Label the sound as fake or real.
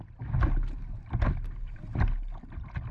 real